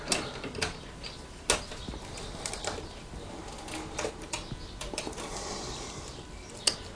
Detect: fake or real real